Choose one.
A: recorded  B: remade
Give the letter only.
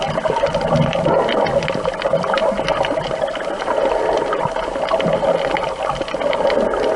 A